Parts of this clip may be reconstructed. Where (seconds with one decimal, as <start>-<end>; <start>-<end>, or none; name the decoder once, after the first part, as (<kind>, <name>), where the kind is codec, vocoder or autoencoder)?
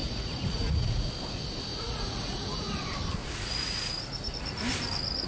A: 0.0-1.1 (vocoder, Vocos); 1.7-2.8; 3.2-4.3